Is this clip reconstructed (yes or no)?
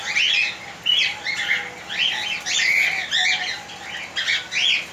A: no